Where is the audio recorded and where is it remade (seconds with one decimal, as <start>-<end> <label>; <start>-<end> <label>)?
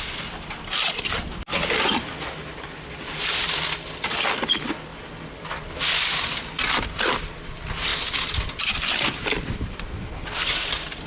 0.0-11.1 recorded